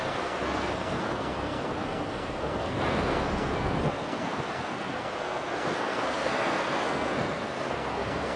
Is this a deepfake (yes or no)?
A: yes